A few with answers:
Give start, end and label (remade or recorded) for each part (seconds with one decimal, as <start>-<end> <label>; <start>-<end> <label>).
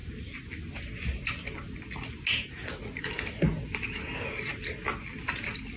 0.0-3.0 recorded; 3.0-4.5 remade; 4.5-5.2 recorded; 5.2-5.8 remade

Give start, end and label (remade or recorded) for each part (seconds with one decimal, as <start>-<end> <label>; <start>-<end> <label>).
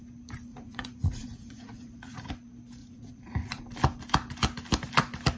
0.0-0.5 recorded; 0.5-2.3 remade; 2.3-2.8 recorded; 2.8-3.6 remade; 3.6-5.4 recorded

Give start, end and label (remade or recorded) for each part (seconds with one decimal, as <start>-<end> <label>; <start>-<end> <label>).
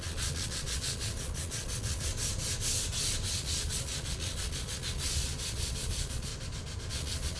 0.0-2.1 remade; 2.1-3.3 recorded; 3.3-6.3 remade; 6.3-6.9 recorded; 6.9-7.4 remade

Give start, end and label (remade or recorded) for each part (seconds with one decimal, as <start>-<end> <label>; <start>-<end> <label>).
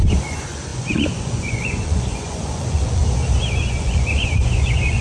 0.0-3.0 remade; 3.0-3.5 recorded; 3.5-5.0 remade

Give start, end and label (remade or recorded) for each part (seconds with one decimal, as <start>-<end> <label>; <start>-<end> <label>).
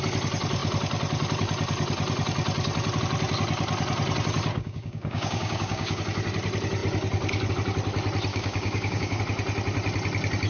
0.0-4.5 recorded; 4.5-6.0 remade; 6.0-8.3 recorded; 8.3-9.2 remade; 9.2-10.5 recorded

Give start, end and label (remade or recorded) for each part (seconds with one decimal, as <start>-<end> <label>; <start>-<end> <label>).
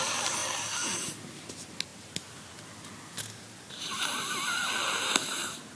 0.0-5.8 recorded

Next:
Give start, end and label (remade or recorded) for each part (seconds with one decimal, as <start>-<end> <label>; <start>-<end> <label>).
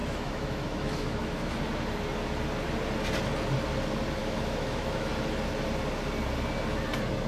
0.0-1.6 remade; 1.6-4.2 recorded; 4.2-5.1 remade; 5.1-7.3 recorded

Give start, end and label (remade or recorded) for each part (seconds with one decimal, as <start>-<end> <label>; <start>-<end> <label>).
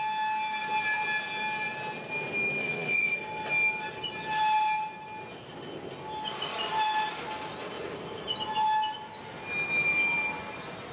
0.0-2.6 recorded; 2.6-3.1 remade; 3.1-10.9 recorded